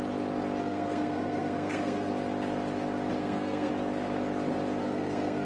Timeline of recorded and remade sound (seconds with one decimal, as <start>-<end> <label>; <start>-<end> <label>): 0.0-0.6 recorded; 0.6-2.1 remade; 2.1-3.2 recorded; 3.2-3.7 remade; 3.7-4.8 recorded; 4.8-5.5 remade